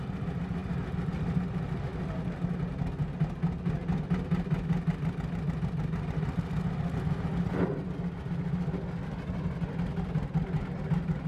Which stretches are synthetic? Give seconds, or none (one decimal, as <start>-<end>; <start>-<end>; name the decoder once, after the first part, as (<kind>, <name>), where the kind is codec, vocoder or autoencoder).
none